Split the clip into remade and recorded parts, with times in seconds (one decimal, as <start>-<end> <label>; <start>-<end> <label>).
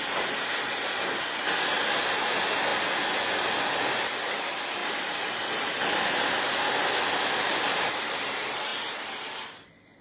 0.0-8.7 recorded; 8.7-10.0 remade